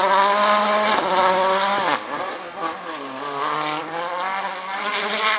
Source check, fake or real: real